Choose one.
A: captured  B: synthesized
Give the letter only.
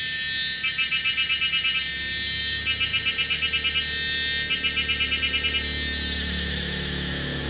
A